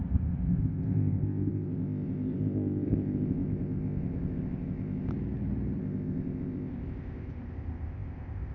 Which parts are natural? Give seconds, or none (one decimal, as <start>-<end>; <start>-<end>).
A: 5.1-5.8